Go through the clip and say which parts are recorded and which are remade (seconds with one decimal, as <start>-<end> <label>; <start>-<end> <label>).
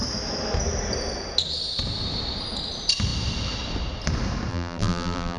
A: 0.0-4.5 recorded; 4.5-5.4 remade